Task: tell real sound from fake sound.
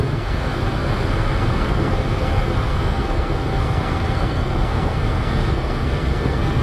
fake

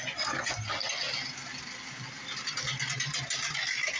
real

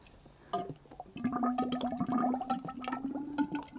real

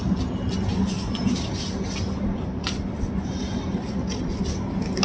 real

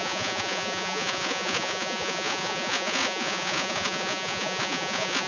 fake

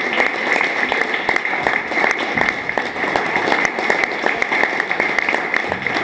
real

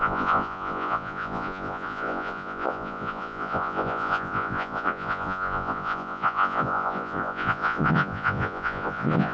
fake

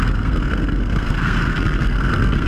fake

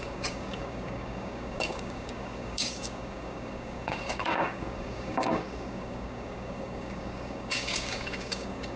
fake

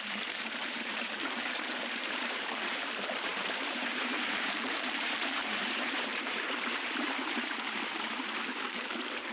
fake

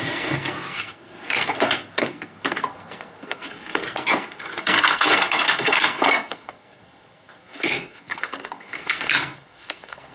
fake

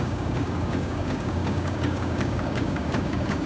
fake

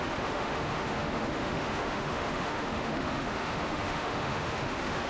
fake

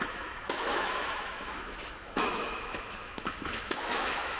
fake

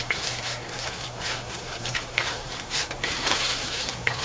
fake